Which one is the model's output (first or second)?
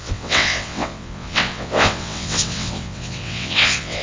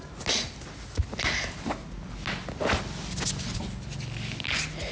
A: first